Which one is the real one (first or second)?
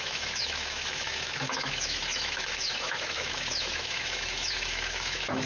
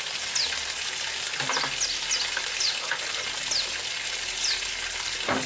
second